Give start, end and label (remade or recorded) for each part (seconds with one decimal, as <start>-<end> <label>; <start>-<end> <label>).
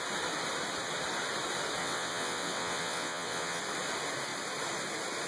0.0-1.8 recorded; 1.8-3.6 remade; 3.6-5.3 recorded